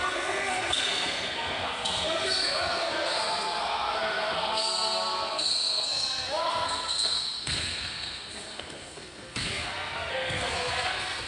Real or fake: fake